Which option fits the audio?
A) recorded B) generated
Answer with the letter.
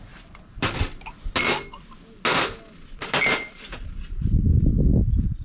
A